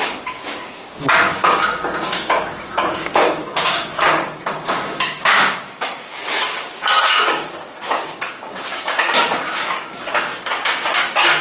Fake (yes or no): yes